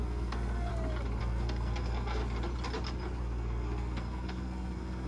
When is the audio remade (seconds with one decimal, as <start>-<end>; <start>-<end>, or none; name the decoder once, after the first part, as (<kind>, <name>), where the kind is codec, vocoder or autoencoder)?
0.0-0.7 (codec, SNAC); 1.2-2.2; 3.2-5.1